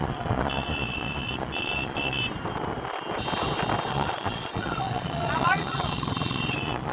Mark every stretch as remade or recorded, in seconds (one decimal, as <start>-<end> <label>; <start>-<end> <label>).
0.0-2.2 remade; 2.2-3.9 recorded; 3.9-6.9 remade